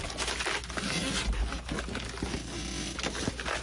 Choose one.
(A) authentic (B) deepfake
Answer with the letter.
A